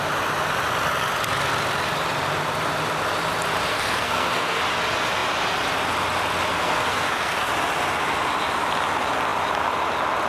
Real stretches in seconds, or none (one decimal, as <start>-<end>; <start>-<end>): 0.0-3.7; 4.6-6.5; 7.5-10.3